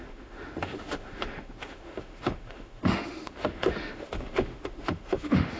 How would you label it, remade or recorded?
remade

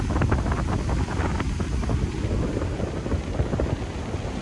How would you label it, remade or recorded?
recorded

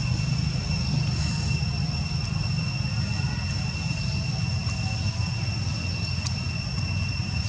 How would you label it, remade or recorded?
recorded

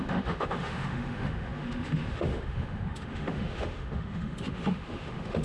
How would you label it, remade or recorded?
remade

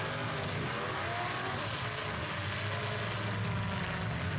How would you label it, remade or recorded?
recorded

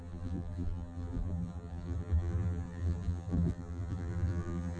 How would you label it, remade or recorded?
remade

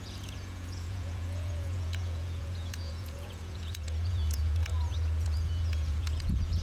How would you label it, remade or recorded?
remade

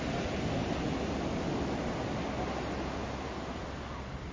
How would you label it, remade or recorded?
recorded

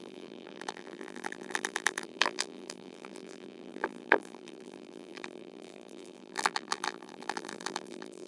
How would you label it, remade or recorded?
remade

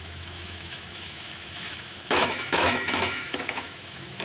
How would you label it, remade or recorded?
remade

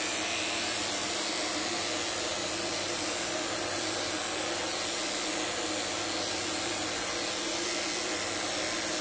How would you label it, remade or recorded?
remade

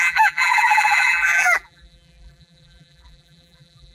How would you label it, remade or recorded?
remade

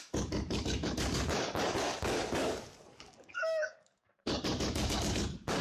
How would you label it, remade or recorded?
remade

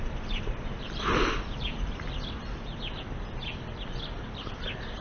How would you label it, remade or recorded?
remade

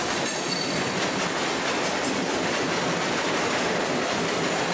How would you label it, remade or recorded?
remade